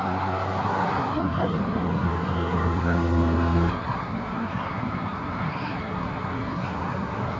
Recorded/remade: remade